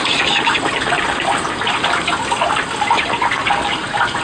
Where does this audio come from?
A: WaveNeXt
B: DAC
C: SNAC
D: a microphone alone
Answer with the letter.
D